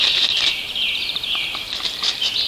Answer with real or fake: fake